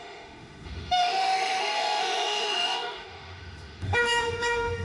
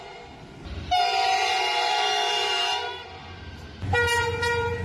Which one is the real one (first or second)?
second